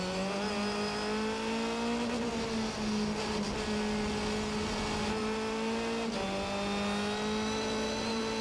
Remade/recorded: recorded